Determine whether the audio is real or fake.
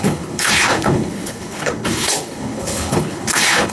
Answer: fake